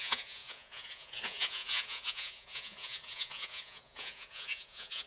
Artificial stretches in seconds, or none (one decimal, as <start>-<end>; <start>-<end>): 0.0-5.1